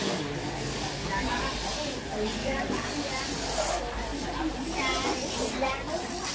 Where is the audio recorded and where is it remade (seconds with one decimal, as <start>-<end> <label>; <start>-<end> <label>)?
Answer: 0.0-1.4 remade; 1.4-2.4 recorded; 2.4-3.2 remade; 3.2-6.3 recorded